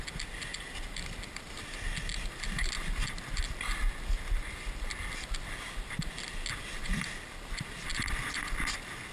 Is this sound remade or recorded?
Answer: recorded